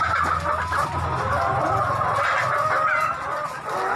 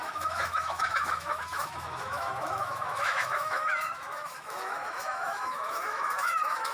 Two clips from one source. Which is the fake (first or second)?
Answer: second